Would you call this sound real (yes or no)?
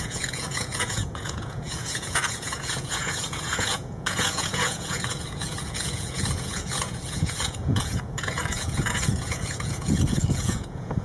no